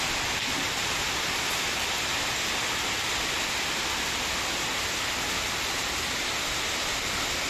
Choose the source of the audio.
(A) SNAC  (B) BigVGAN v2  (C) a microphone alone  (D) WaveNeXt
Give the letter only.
C